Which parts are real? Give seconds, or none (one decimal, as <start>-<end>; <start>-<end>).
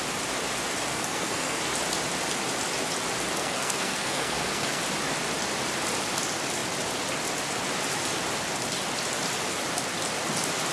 0.0-0.9; 1.6-3.4; 4.8-10.7